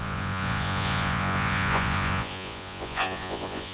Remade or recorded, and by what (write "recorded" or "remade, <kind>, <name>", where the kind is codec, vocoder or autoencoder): remade, vocoder, Vocos